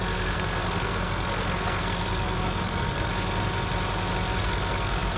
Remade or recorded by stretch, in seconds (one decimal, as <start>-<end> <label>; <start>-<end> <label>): 0.0-3.1 remade; 3.1-4.4 recorded; 4.4-5.2 remade